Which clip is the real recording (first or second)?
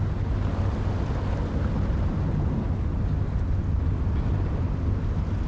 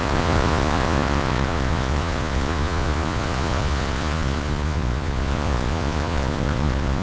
first